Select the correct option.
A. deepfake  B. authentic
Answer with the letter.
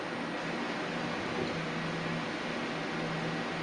B